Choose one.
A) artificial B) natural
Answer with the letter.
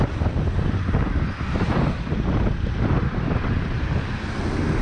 B